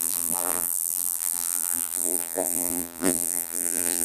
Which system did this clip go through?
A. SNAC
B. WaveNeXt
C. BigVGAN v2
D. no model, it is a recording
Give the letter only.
C